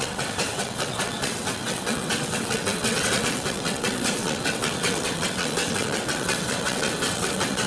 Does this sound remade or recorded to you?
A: remade